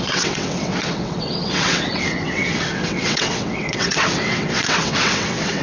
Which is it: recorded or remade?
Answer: remade